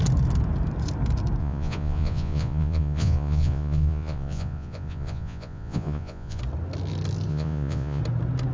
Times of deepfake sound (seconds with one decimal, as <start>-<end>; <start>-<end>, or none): 1.4-6.4; 7.3-8.0